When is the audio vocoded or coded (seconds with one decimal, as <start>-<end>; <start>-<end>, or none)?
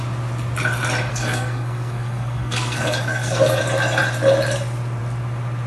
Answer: 1.1-3.6